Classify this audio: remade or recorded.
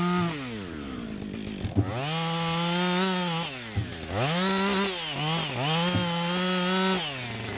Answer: recorded